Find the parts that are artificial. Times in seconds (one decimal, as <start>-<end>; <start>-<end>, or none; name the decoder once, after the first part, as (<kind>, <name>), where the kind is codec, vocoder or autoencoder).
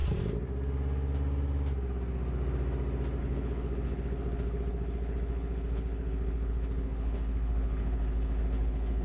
3.2-9.0 (codec, HILCodec)